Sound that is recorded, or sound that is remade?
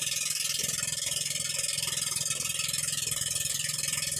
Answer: remade